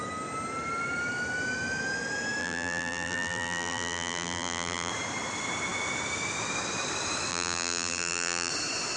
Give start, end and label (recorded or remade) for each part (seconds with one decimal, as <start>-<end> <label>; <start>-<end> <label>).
0.0-2.4 recorded; 2.4-4.9 remade; 4.9-7.3 recorded; 7.3-8.5 remade; 8.5-9.0 recorded